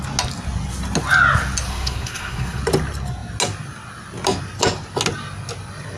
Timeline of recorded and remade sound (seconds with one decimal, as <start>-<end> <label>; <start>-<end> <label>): 0.0-1.7 recorded; 1.7-2.6 remade; 2.6-6.0 recorded